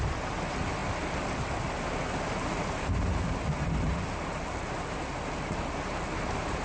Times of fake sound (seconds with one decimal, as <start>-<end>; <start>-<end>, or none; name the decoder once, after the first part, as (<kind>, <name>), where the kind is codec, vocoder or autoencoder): none